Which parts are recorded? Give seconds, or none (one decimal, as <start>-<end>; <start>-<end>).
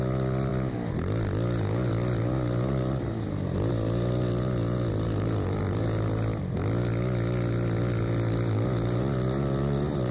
0.0-10.1